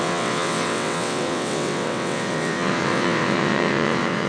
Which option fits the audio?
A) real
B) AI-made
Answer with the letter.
B